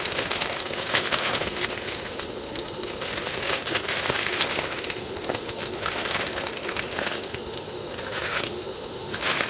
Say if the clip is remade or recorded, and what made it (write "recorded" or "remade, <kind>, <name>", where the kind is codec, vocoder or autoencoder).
remade, autoencoder, DAC-VAE